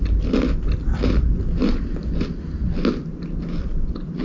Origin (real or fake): real